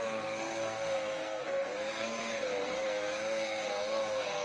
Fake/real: fake